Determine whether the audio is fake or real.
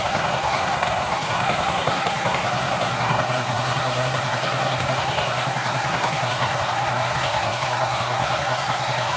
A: fake